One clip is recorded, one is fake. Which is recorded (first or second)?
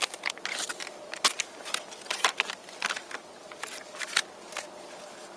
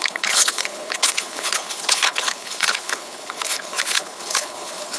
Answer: first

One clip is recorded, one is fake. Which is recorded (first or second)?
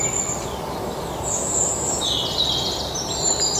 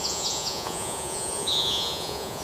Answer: first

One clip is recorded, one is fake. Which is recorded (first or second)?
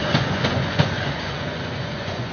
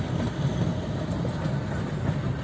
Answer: second